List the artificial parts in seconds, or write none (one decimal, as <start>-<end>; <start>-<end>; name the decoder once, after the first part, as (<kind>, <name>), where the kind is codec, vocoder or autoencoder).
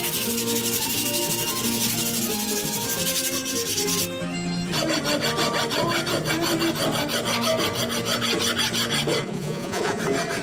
9.2-10.0 (vocoder, Vocos)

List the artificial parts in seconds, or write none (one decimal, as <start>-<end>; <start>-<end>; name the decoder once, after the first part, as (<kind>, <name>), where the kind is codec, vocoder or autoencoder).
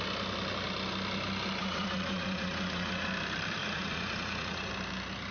1.6-3.1 (vocoder, Vocos); 3.6-4.7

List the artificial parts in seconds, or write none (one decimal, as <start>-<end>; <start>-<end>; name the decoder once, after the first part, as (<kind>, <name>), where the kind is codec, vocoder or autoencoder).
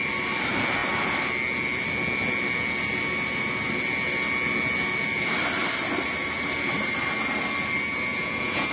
8.1-8.7 (vocoder, Vocos)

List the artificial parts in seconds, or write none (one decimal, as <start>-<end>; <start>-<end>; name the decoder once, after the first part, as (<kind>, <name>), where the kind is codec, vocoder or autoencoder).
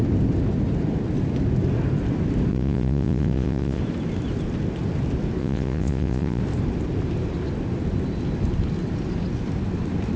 2.5-3.8 (vocoder, Vocos); 5.4-6.4